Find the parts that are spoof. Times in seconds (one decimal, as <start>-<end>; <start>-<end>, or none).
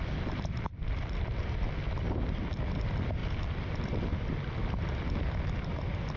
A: none